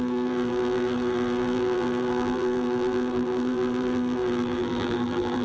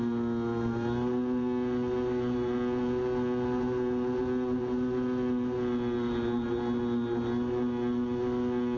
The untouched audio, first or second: second